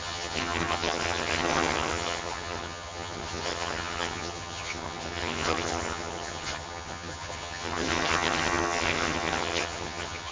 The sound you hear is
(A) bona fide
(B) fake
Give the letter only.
B